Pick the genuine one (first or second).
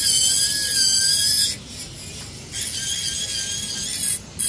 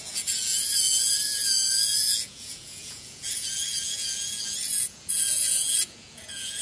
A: first